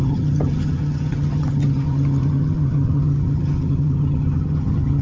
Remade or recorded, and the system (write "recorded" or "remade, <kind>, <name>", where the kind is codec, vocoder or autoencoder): remade, vocoder, HiFi-GAN